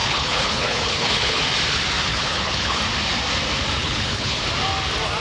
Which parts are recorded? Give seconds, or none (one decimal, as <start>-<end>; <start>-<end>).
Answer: 1.4-2.1; 2.8-3.8; 4.4-5.2